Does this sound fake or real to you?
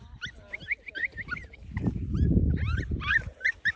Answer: real